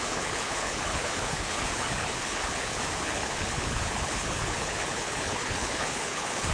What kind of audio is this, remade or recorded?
remade